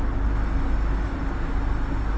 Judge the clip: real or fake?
real